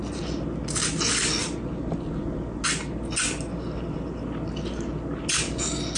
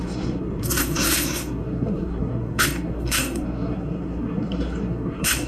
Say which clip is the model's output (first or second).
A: second